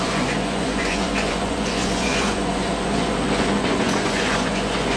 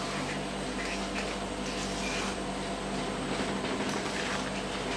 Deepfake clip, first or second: first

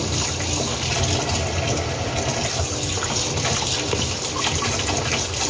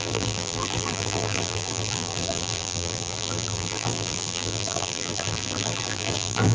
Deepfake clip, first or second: second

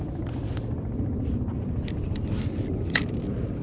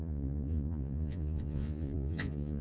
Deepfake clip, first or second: second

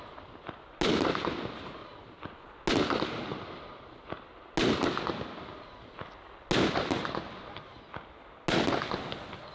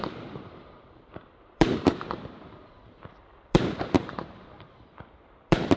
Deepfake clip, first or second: second